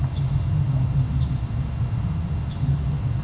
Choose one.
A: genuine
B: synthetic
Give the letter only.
A